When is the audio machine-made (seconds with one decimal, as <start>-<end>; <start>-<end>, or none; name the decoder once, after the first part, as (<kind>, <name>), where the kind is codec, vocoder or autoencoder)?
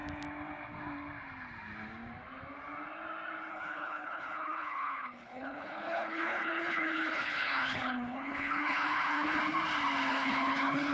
3.5-9.4 (codec, HILCodec); 10.1-10.9